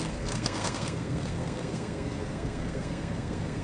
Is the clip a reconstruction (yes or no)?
yes